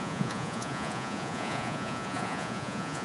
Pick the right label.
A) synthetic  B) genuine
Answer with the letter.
A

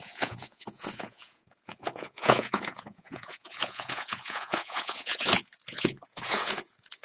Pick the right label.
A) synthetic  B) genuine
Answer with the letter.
A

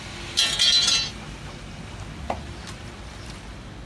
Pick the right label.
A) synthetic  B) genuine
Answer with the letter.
B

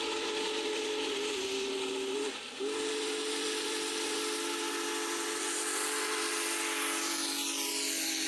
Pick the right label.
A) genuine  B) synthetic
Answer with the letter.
A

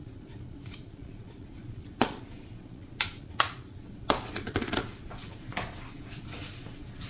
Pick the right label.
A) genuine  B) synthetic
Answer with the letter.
B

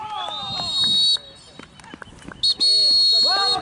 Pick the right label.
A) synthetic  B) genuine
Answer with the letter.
B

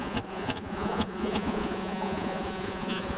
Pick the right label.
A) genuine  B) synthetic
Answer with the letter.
B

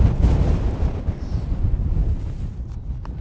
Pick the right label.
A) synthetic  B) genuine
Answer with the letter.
B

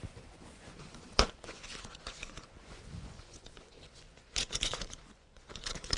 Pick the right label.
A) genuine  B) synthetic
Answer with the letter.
B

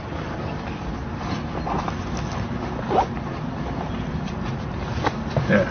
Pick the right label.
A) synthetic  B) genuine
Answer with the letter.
B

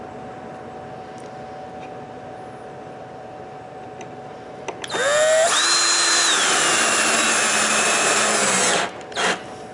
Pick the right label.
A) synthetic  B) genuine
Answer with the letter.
B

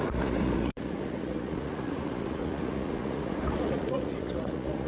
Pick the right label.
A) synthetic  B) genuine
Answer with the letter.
A